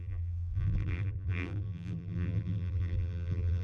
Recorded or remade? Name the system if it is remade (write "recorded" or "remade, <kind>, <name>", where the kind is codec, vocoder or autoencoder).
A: remade, vocoder, BigVGAN v2